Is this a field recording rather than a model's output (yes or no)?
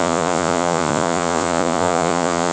no